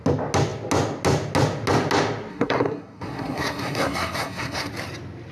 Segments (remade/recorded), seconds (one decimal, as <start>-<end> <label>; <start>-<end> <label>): 0.0-2.3 recorded; 2.3-4.7 remade; 4.7-5.3 recorded